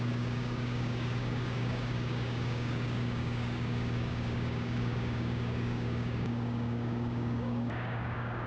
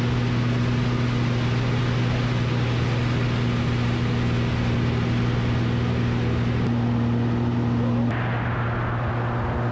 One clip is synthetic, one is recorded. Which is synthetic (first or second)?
first